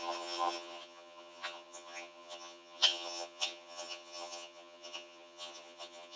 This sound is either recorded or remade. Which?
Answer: remade